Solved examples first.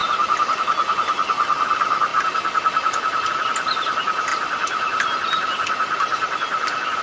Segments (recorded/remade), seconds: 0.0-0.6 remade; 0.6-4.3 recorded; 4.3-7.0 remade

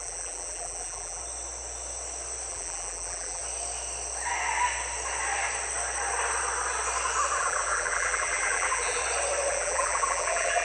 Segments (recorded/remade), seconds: 0.0-1.2 remade; 1.2-2.5 recorded; 2.5-3.4 remade; 3.4-7.4 recorded; 7.4-9.0 remade; 9.0-9.5 recorded; 9.5-10.6 remade

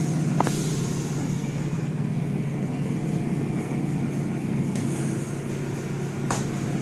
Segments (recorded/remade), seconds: 0.0-1.3 recorded; 1.3-4.0 remade; 4.0-4.4 recorded; 4.4-5.0 remade; 5.0-6.8 recorded

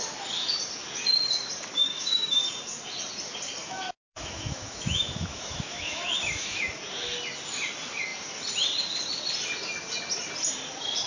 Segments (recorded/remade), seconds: 0.0-1.7 recorded; 1.7-2.4 remade; 2.4-3.6 recorded; 3.6-6.8 remade; 6.8-11.1 recorded

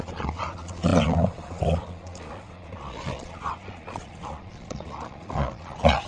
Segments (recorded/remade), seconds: 0.0-6.1 remade

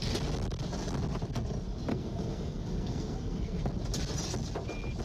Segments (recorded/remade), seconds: 0.0-1.9 recorded; 1.9-3.7 remade; 3.7-5.0 recorded